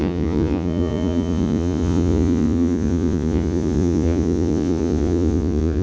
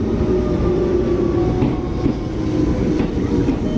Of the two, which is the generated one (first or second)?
first